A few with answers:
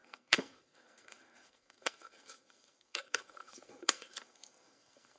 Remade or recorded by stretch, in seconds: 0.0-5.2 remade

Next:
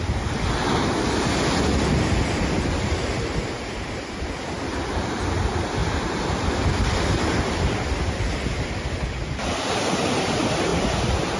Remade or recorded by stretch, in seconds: 0.0-11.4 recorded

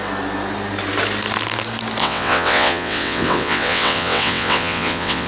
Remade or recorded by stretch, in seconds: 0.0-2.0 recorded; 2.0-5.3 remade

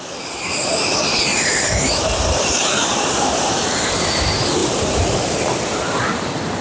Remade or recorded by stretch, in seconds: 0.0-1.3 recorded; 1.3-3.8 remade; 3.8-4.6 recorded; 4.6-5.4 remade; 5.4-6.6 recorded

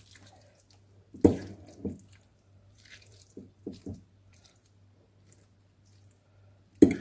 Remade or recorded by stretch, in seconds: 0.0-2.3 recorded; 2.3-4.5 remade; 4.5-7.0 recorded